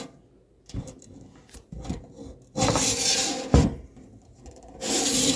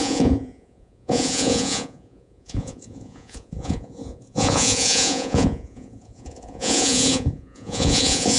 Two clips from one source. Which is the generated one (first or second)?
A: second